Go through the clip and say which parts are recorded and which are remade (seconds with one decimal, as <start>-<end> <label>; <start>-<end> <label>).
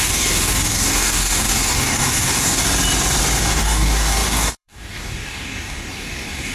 0.0-2.6 remade; 2.6-3.4 recorded; 3.4-6.5 remade